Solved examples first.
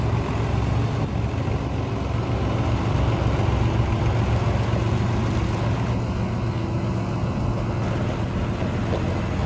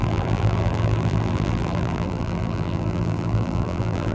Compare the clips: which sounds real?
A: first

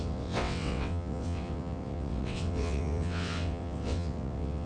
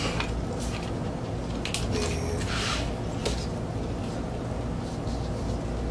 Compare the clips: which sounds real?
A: second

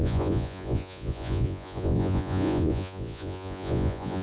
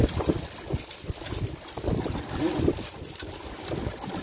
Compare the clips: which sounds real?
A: second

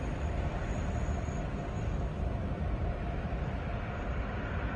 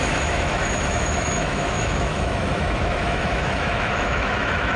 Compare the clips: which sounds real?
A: first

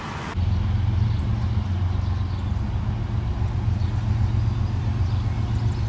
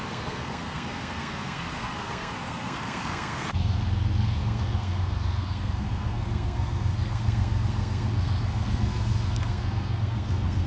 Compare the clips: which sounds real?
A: first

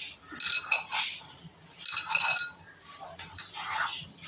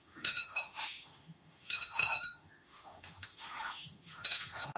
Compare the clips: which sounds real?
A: first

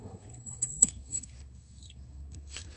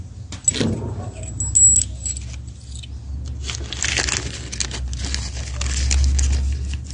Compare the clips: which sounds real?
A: second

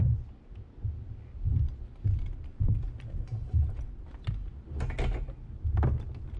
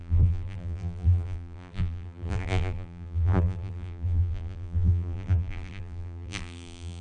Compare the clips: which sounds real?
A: first